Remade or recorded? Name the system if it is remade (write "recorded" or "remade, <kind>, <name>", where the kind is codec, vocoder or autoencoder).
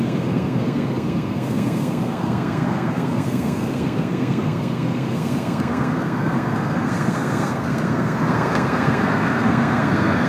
remade, codec, SNAC